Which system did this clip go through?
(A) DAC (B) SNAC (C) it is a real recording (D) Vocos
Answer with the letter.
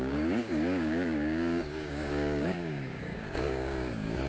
A